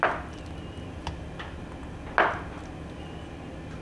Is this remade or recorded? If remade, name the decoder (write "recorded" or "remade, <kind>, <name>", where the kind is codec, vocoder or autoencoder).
recorded